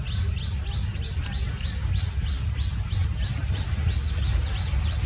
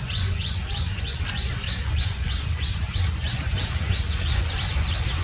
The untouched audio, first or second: first